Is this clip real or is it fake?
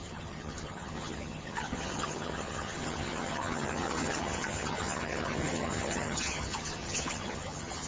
fake